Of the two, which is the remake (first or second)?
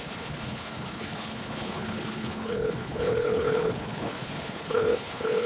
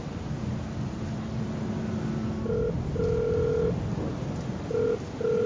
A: first